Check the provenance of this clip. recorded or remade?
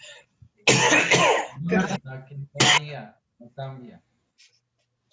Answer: recorded